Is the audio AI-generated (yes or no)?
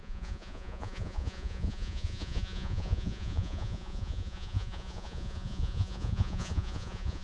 yes